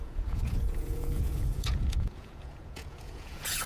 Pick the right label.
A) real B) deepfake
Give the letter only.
B